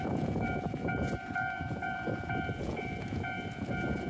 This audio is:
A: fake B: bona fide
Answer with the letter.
A